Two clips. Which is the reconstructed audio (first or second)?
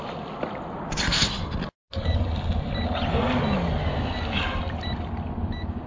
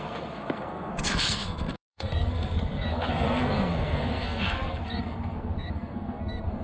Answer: second